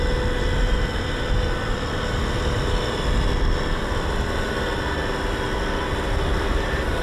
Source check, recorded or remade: recorded